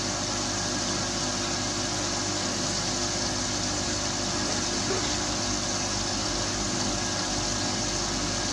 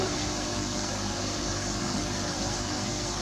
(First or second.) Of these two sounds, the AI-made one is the second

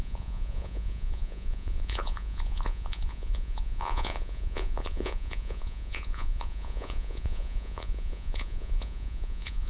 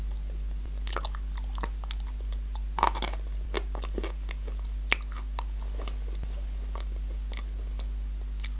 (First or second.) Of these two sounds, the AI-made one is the first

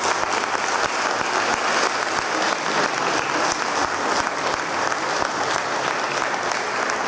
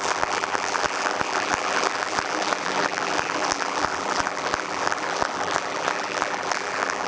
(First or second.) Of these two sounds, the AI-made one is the second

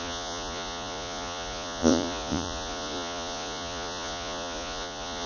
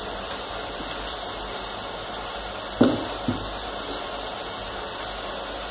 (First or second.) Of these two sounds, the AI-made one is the first